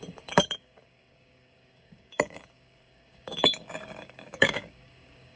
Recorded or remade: remade